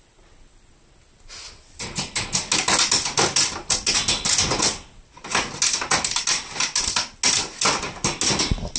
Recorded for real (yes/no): yes